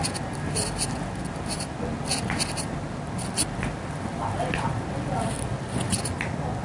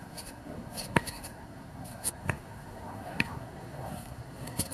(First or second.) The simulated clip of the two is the second